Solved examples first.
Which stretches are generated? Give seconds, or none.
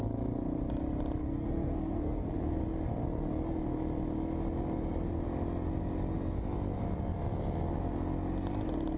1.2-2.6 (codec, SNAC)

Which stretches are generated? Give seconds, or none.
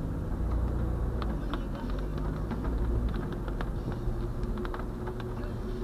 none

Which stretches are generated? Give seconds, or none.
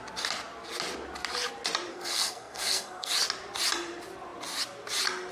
1.9-3.1 (codec, SNAC)